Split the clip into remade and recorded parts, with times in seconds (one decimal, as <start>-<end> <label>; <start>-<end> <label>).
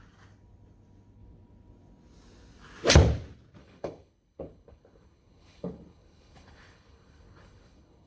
0.0-3.6 recorded; 3.6-8.1 remade